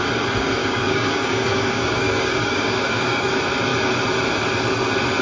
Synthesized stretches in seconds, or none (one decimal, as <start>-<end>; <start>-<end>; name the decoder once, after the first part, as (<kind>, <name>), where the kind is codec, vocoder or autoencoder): 0.6-3.3 (codec, DAC)